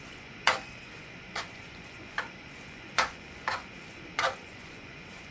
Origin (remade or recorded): remade